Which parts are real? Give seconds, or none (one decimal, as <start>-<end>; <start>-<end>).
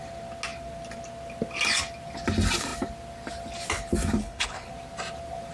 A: 0.0-4.2; 4.7-5.5